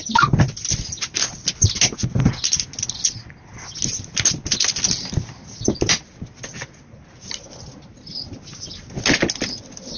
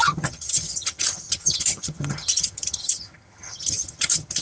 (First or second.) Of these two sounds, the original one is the first